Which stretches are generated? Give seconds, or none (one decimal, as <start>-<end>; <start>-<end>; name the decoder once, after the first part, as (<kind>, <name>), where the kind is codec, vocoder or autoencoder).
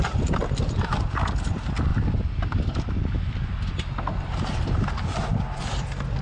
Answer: none